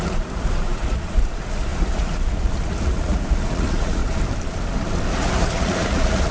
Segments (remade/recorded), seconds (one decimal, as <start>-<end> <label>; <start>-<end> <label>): 0.0-4.0 remade; 4.0-5.1 recorded; 5.1-6.3 remade